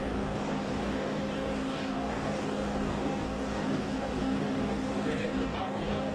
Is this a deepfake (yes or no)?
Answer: yes